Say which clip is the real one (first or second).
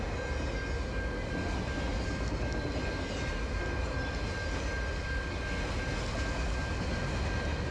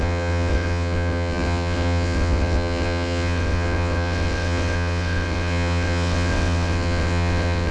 first